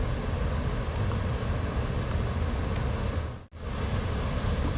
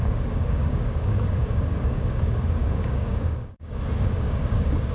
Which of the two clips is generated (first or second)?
second